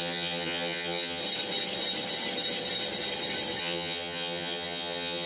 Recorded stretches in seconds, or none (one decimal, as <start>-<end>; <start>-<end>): 1.2-3.6